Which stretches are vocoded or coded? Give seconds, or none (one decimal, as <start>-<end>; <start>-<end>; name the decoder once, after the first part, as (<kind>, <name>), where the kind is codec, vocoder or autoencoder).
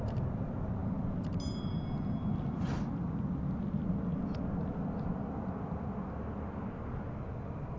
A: none